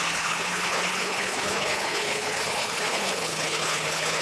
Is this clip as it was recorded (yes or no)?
no